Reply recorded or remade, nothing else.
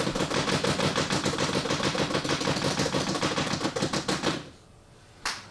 recorded